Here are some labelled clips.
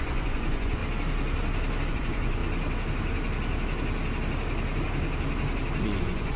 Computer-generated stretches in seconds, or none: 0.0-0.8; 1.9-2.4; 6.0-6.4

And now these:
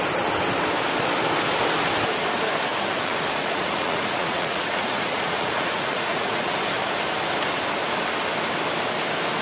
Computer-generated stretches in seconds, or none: 2.7-6.6

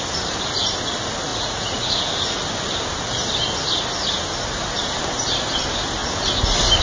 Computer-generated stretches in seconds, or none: 1.3-2.0

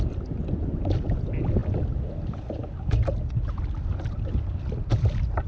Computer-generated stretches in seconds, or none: none

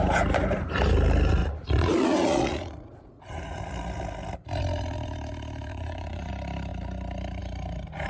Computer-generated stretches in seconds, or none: 1.4-3.6; 5.7-6.3